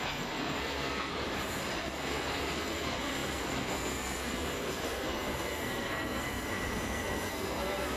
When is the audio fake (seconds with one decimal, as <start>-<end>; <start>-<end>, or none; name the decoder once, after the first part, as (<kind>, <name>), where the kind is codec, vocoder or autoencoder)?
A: 0.0-1.1 (codec, SNAC); 1.8-8.0